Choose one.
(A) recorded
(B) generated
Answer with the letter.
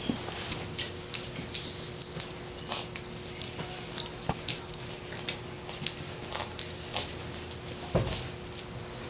A